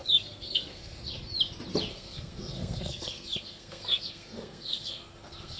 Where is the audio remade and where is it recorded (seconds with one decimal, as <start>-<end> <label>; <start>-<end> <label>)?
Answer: 0.0-1.0 remade; 1.0-1.9 recorded; 1.9-5.6 remade